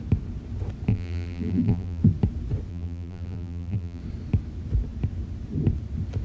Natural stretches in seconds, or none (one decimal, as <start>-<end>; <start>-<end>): 0.0-0.9; 2.0-2.7; 4.0-6.2